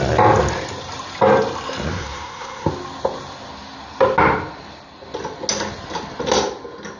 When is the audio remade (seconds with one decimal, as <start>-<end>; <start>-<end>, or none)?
1.9-2.7